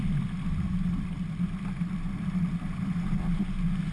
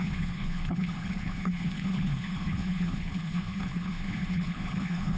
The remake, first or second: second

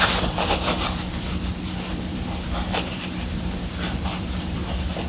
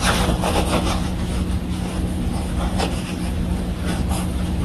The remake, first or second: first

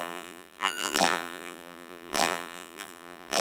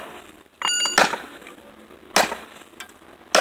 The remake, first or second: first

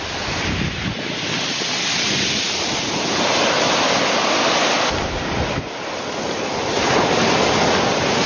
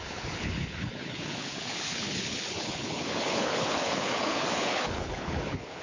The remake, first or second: second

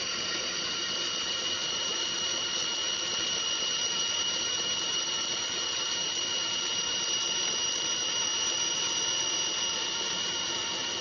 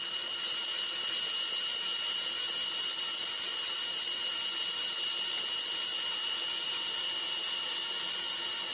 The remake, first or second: first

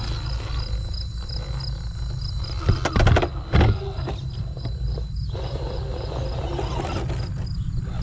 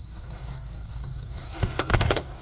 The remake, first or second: second